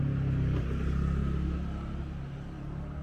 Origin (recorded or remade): recorded